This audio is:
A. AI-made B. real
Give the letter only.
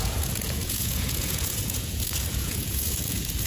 A